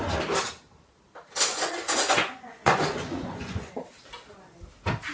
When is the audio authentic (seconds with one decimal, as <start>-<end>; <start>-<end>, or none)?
0.0-1.5; 3.7-5.1